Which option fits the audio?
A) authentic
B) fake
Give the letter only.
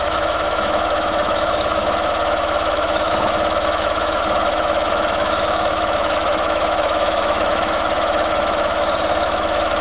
B